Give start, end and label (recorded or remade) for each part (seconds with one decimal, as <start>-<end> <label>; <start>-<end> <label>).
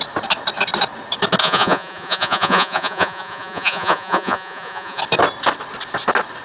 0.0-1.4 recorded; 1.4-5.0 remade; 5.0-6.4 recorded